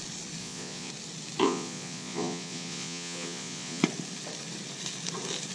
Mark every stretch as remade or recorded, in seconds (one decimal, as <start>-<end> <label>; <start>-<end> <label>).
0.0-0.4 recorded; 0.4-0.9 remade; 0.9-1.4 recorded; 1.4-3.8 remade; 3.8-5.5 recorded